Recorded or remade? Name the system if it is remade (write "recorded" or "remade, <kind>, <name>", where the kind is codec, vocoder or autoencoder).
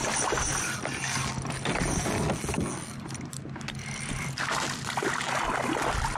recorded